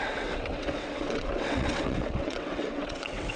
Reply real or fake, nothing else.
fake